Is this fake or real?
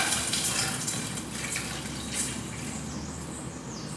real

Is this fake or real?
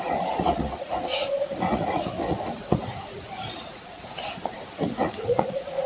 fake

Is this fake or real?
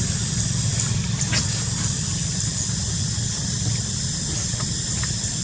real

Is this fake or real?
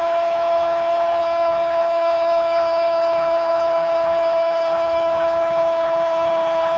fake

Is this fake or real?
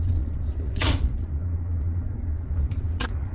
fake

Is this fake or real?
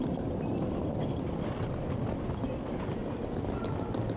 real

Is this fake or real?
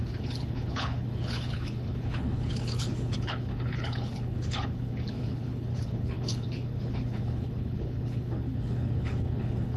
fake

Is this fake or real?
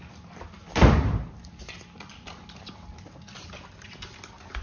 real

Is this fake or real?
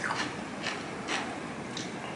real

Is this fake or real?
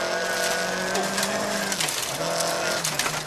real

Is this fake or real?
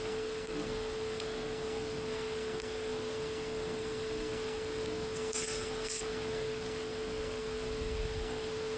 fake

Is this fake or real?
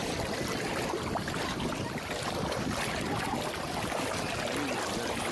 real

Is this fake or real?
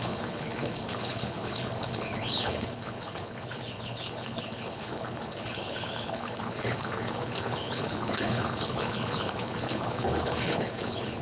fake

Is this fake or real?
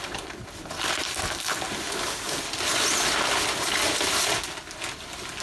real